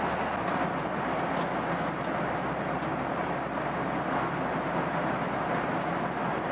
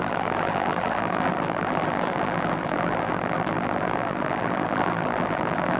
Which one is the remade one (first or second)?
second